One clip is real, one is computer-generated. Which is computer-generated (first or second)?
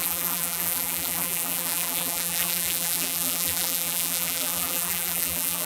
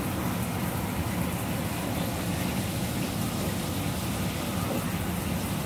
first